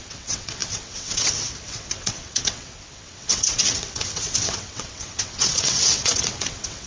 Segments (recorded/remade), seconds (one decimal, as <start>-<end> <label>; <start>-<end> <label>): 0.0-6.9 remade